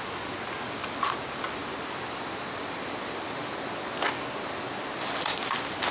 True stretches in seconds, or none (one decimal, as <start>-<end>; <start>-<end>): 0.0-5.9